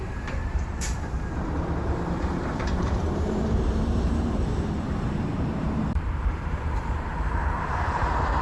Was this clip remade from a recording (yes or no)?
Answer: yes